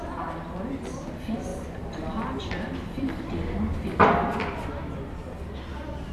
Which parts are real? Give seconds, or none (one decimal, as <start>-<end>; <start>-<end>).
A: 0.0-1.5; 4.7-6.1